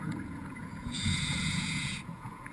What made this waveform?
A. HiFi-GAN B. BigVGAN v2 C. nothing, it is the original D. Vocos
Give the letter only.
D